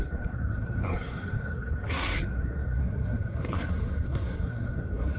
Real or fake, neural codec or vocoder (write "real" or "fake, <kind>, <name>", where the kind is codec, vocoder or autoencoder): fake, codec, SNAC